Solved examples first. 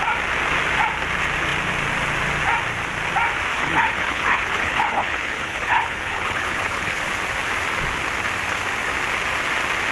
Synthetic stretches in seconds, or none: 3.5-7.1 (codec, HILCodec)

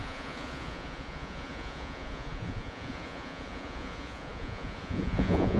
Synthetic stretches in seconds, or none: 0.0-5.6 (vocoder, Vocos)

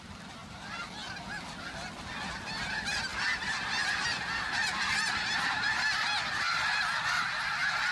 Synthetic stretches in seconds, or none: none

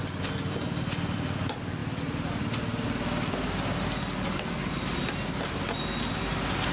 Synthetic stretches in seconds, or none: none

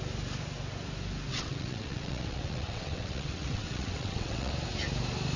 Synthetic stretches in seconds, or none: 1.3-4.5 (vocoder, WaveNeXt)

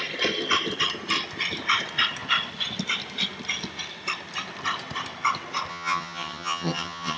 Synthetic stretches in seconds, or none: 5.7-7.2 (vocoder, HiFi-GAN)

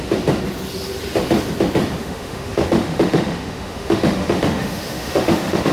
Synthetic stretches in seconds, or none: 2.0-5.7 (autoencoder, DAC-VAE)

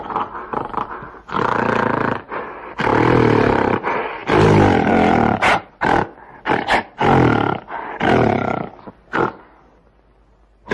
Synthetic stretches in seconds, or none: none